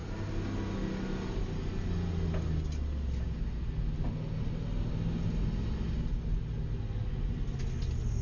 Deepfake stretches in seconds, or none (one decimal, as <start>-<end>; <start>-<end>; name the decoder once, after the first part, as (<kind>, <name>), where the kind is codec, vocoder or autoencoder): none